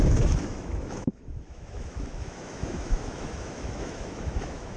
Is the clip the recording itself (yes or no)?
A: no